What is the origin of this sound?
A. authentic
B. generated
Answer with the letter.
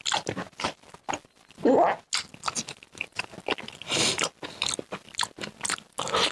A